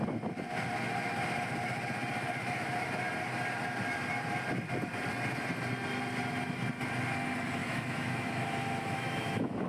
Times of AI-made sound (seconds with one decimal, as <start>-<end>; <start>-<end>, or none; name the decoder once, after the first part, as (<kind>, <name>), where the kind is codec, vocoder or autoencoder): 7.6-9.7 (autoencoder, DAC-VAE)